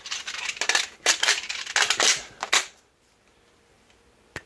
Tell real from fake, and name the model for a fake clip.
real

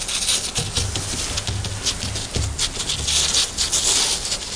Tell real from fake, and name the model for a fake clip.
real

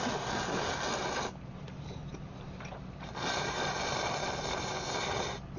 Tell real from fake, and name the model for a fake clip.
real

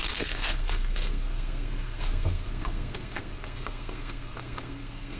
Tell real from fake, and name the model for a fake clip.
fake, codec, SNAC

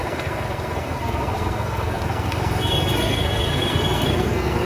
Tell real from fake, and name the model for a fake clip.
fake, codec, SNAC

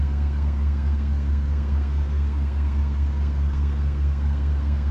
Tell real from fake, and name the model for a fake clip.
fake, codec, SNAC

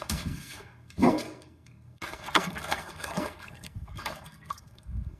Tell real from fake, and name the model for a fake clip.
fake, codec, SNAC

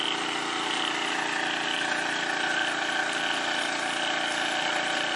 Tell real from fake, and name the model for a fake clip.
real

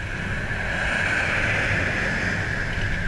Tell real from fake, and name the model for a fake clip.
real